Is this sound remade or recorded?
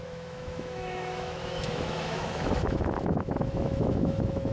remade